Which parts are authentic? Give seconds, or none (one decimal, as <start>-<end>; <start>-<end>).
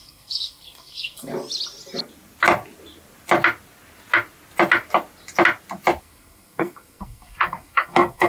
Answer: 1.3-6.0